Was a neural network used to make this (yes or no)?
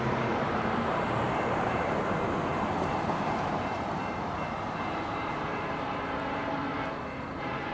yes